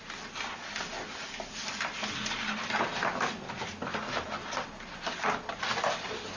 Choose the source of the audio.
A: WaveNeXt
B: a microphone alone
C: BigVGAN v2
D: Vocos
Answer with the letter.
B